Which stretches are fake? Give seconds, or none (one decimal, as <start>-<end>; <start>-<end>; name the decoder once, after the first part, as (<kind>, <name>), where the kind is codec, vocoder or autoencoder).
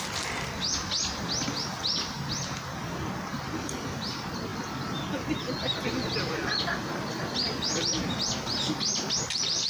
none